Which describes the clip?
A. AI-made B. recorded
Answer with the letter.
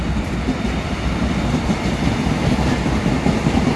B